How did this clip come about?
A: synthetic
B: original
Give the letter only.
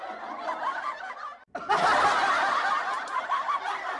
B